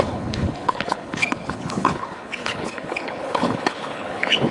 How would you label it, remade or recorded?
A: remade